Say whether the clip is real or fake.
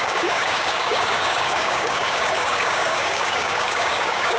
fake